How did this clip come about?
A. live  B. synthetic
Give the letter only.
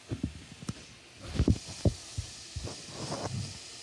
A